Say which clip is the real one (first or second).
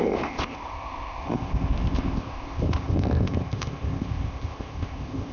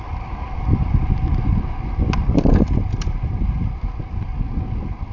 second